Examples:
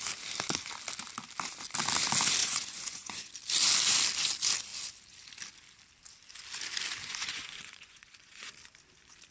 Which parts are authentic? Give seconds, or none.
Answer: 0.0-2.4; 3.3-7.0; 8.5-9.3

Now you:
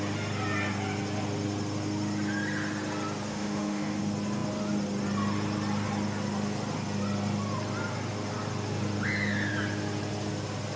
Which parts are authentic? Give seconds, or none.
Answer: 0.0-3.3; 4.0-10.8

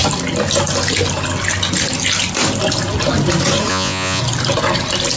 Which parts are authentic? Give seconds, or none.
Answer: 0.0-3.7; 4.2-5.2